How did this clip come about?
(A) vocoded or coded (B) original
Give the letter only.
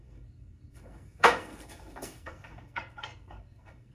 A